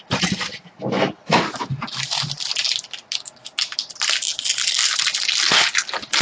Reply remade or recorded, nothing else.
recorded